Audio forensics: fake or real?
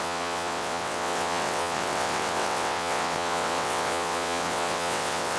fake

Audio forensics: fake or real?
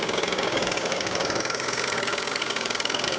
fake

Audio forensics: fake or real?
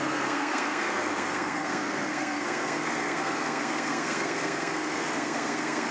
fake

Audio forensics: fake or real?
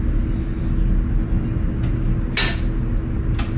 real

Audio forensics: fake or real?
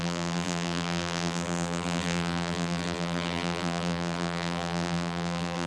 fake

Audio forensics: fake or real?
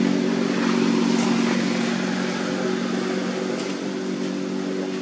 real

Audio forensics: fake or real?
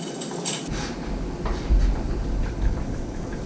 real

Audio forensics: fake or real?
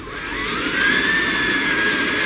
real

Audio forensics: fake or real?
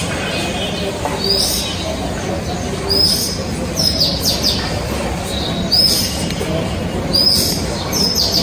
real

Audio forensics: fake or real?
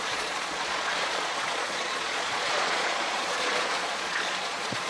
fake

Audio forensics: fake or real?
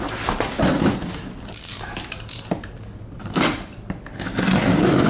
real